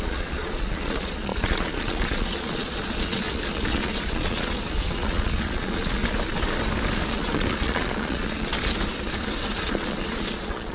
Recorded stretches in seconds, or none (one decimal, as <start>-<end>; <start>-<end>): 6.0-7.1; 8.5-9.6